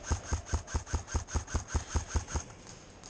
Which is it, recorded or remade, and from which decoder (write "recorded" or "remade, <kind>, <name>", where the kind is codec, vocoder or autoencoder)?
recorded